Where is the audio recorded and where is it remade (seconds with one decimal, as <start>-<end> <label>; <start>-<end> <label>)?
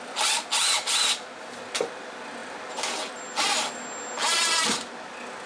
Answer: 0.0-5.5 recorded